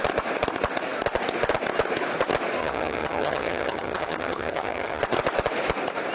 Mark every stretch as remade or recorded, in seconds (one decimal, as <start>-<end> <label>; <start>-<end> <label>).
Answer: 0.0-2.6 recorded; 2.6-5.0 remade; 5.0-6.1 recorded

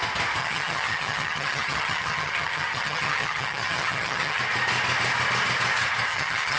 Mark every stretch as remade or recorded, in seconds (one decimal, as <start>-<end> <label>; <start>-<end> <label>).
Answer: 0.0-0.4 recorded; 0.4-4.4 remade; 4.4-6.1 recorded; 6.1-6.6 remade

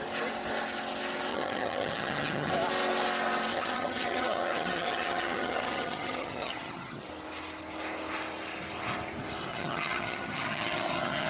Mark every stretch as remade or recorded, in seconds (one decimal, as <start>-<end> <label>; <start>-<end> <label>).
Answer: 0.0-1.3 recorded; 1.3-2.5 remade; 2.5-3.5 recorded; 3.5-7.1 remade; 7.1-9.5 recorded; 9.5-11.3 remade

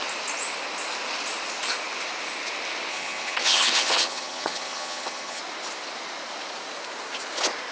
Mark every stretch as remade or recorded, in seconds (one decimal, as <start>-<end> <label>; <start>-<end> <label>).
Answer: 0.0-2.9 recorded; 2.9-5.4 remade; 5.4-7.7 recorded